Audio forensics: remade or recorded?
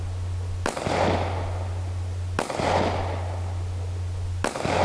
recorded